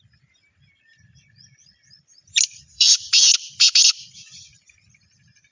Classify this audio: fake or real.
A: fake